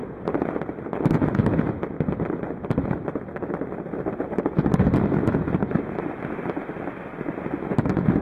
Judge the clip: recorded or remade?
recorded